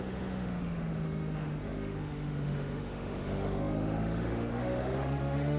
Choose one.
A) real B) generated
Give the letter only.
B